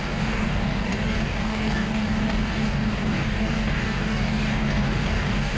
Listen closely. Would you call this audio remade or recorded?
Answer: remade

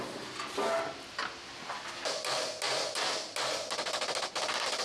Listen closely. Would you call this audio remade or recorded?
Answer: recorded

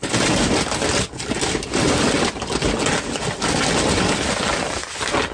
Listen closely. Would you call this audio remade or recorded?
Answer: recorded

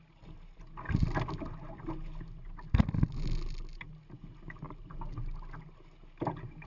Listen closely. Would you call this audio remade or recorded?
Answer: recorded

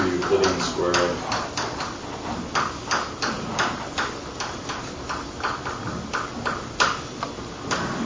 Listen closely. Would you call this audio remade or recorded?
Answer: recorded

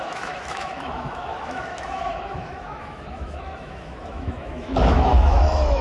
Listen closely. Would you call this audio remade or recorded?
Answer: remade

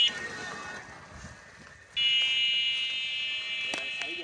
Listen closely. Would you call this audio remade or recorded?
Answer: recorded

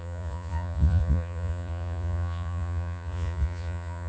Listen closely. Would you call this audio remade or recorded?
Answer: remade